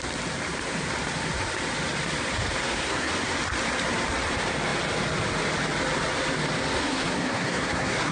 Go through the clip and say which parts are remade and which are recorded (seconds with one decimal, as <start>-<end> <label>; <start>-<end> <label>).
0.0-2.6 recorded; 2.6-3.1 remade; 3.1-6.8 recorded; 6.8-8.1 remade